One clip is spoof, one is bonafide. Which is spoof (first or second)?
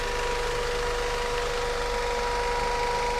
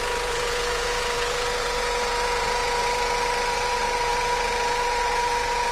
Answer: second